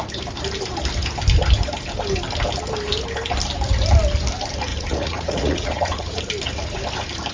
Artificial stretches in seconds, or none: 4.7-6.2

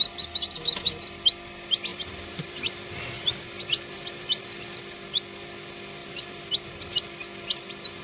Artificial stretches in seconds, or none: 1.9-4.4; 6.0-7.0

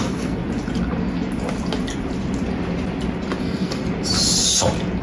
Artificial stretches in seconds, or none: 0.0-0.4; 3.4-3.8

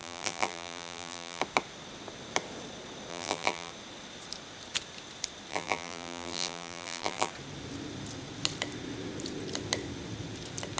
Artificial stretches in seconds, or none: 0.0-1.4; 3.1-3.7; 5.5-7.3